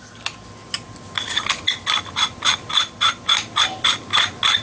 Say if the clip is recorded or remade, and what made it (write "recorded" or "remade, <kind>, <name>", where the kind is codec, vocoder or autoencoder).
recorded